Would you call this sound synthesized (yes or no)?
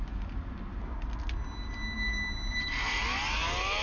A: no